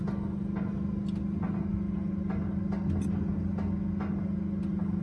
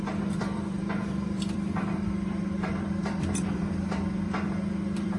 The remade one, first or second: second